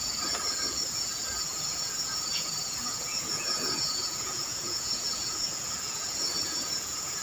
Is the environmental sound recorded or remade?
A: remade